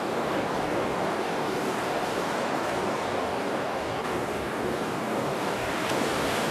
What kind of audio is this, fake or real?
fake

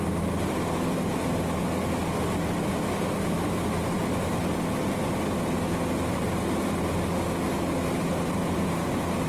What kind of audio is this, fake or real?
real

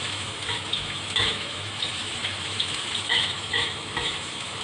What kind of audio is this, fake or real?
fake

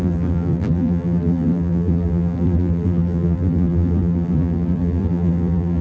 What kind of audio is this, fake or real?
fake